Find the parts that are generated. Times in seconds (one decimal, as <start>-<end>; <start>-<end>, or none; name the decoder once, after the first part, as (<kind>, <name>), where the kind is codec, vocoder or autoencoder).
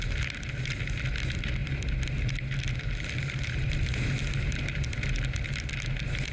none